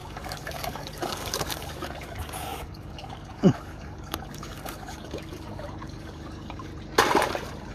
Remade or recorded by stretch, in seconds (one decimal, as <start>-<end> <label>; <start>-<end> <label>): 0.0-6.7 remade; 6.7-7.7 recorded